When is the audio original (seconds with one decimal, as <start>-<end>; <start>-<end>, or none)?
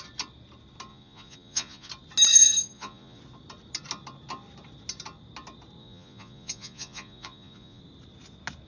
0.0-0.9; 1.9-2.3; 3.2-5.8; 7.8-8.7